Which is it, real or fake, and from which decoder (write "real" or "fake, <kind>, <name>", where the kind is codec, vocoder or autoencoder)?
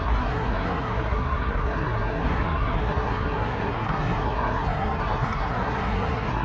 fake, codec, SNAC